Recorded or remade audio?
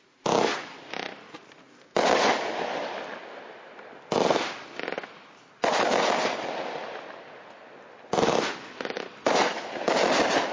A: recorded